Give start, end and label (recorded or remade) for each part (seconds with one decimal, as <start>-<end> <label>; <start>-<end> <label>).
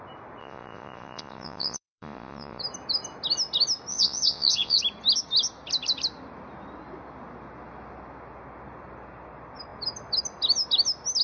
0.0-0.4 recorded; 0.4-2.6 remade; 2.6-3.9 recorded; 3.9-4.8 remade; 4.8-11.2 recorded